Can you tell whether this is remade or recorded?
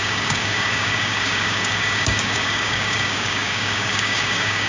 remade